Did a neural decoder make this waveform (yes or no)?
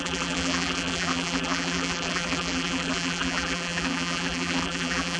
yes